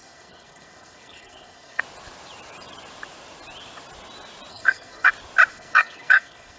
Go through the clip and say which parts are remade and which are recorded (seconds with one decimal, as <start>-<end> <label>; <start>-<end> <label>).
0.0-1.8 remade; 1.8-4.5 recorded; 4.5-5.1 remade; 5.1-5.5 recorded; 5.5-6.6 remade